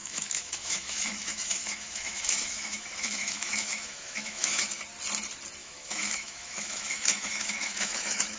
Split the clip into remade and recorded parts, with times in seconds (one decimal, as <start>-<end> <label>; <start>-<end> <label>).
0.0-4.8 remade; 4.8-5.6 recorded; 5.6-8.4 remade

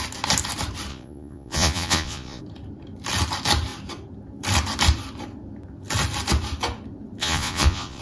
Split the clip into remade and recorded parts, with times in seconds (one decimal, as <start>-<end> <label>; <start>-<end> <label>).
0.0-0.9 recorded; 0.9-2.4 remade; 2.4-7.2 recorded; 7.2-8.0 remade

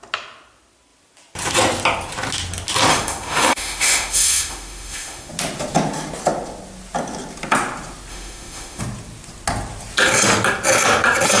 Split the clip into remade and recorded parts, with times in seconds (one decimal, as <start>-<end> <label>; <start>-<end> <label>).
0.0-2.9 recorded; 2.9-5.3 remade; 5.3-8.1 recorded; 8.1-8.8 remade; 8.8-11.4 recorded

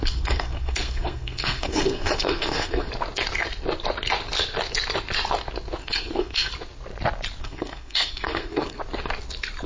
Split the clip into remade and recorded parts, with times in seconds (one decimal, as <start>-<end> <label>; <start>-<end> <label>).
0.0-2.9 remade; 2.9-5.8 recorded; 5.8-6.5 remade; 6.5-7.4 recorded; 7.4-8.8 remade; 8.8-9.7 recorded